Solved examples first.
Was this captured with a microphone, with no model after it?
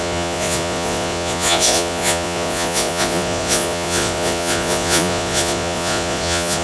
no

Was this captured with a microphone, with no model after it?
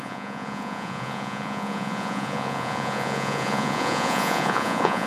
no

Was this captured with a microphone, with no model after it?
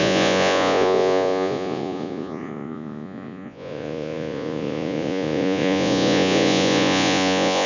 no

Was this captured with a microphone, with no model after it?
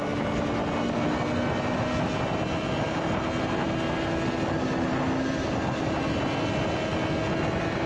yes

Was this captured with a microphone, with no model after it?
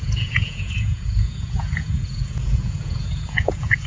no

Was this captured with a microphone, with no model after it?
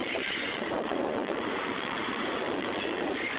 no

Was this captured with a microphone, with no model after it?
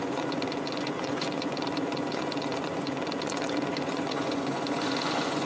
no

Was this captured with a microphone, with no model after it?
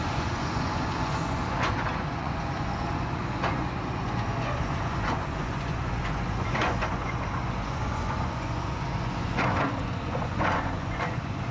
no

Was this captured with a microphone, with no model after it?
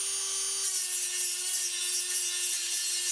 yes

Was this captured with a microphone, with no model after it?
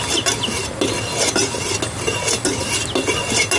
yes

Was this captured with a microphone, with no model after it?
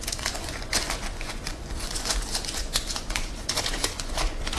no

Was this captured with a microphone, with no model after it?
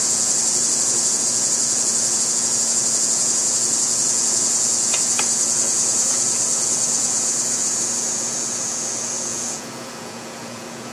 no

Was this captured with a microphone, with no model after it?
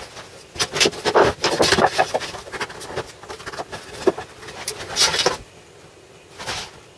yes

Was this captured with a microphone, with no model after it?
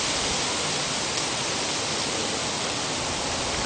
yes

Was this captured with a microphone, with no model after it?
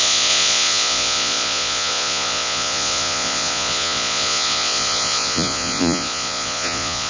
no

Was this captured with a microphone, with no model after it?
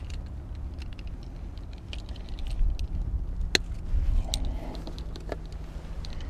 yes